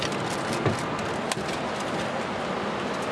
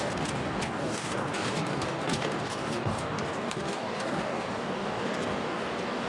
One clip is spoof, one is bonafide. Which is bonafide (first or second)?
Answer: first